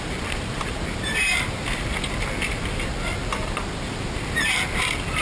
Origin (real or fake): real